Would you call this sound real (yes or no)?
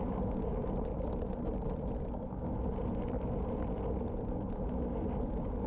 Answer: yes